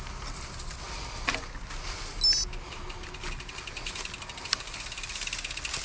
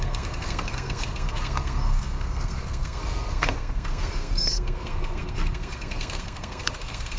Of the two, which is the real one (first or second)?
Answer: first